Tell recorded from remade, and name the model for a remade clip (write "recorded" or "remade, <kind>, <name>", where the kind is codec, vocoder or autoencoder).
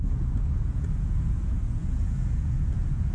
remade, vocoder, Vocos